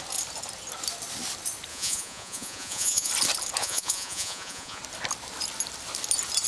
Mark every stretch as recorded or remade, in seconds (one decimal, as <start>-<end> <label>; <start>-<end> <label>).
0.0-1.7 recorded; 1.7-3.1 remade; 3.1-3.6 recorded; 3.6-4.8 remade; 4.8-6.5 recorded